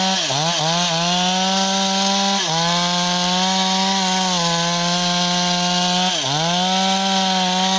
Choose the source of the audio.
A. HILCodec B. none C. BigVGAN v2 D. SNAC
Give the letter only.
B